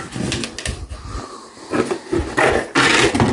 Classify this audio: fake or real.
real